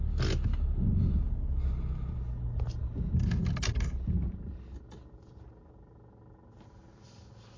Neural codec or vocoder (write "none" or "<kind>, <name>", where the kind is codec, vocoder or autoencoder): none